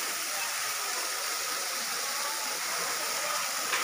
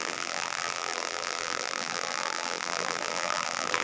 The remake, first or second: second